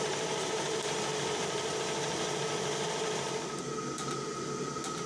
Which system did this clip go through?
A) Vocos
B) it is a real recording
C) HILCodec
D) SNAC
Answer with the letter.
B